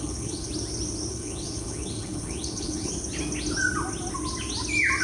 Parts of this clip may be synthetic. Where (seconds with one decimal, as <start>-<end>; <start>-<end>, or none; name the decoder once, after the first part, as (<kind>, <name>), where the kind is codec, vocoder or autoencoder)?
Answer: 0.0-0.5 (codec, HILCodec); 1.1-2.9